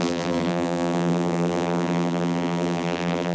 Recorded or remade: remade